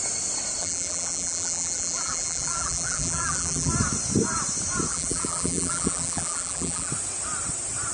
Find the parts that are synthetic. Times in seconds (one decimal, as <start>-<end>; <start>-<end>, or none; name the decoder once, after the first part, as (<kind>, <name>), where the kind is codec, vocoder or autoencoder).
0.6-3.7 (vocoder, BigVGAN v2); 4.9-6.9